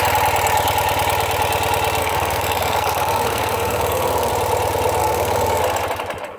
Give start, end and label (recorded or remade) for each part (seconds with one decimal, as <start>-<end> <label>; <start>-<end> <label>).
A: 0.0-2.0 recorded; 2.0-4.3 remade; 4.3-5.0 recorded; 5.0-5.6 remade; 5.6-6.4 recorded